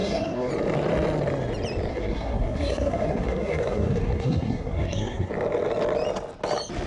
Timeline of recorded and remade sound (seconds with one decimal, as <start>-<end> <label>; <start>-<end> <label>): 0.0-0.5 remade; 0.5-1.9 recorded; 1.9-5.3 remade; 5.3-6.9 recorded